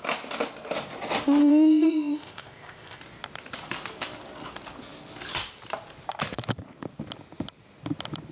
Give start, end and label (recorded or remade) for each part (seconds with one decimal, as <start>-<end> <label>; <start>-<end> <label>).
0.0-1.4 recorded; 1.4-3.0 remade; 3.0-8.3 recorded